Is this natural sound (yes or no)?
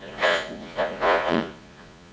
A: no